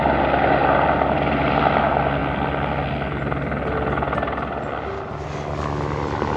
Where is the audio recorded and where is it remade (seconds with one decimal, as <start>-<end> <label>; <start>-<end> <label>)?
0.0-0.6 recorded; 0.6-1.6 remade; 1.6-6.4 recorded